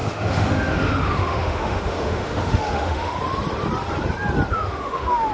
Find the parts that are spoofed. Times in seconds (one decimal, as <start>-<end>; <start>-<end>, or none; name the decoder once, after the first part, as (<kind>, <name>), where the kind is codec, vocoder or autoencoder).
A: 0.0-3.2 (autoencoder, DAC-VAE); 4.5-5.3